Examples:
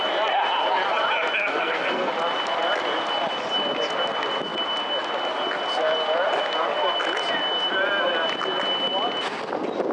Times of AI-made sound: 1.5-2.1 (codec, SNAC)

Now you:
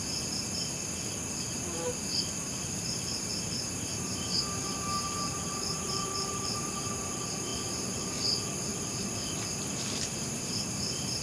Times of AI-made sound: 2.1-6.9 (vocoder, BigVGAN v2); 7.5-8.1

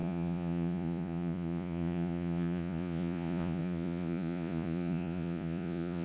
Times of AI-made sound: 0.0-6.0 (vocoder, Vocos)

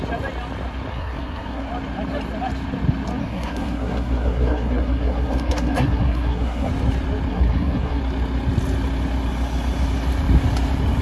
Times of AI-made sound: 0.9-1.7 (codec, SNAC); 3.2-6.7; 7.3-8.0